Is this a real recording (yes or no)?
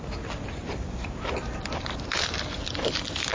no